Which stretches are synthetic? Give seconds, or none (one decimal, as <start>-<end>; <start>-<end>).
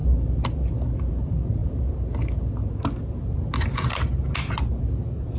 none